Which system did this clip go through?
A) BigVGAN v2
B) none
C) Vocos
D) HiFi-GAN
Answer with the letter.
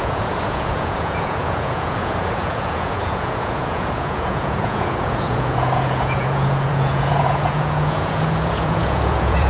C